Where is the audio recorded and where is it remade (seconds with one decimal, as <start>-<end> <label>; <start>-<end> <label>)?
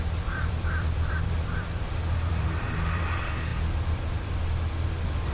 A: 0.0-5.3 remade